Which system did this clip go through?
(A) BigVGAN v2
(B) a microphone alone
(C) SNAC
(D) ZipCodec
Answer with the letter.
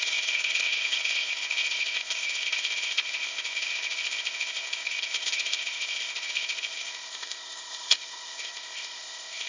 D